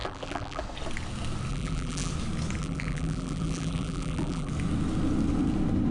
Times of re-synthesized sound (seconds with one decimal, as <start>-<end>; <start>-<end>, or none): 0.0-0.6; 1.5-2.1; 2.6-4.5